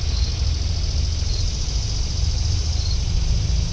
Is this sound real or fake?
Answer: real